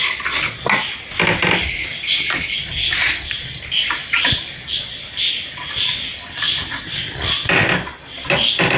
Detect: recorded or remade recorded